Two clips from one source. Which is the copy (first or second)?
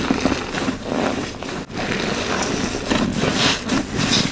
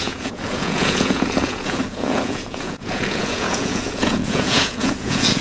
second